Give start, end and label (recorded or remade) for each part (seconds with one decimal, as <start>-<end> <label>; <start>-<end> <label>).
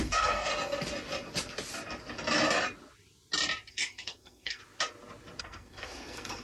0.0-0.5 remade; 0.5-3.7 recorded; 3.7-4.6 remade; 4.6-5.4 recorded; 5.4-6.4 remade